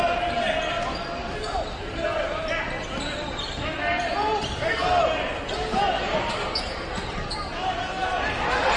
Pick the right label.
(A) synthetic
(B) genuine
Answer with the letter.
B